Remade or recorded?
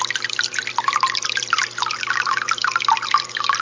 recorded